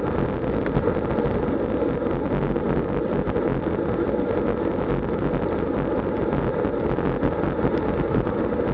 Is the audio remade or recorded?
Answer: recorded